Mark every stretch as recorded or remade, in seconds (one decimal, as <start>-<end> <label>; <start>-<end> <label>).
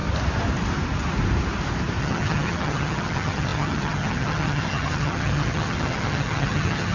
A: 0.0-2.0 recorded; 2.0-6.9 remade